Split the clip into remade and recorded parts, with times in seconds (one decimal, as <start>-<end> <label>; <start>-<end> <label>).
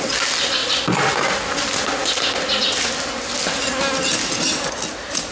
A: 0.0-5.3 recorded